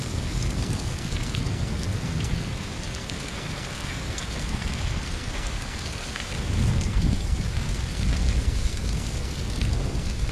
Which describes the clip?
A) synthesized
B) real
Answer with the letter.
A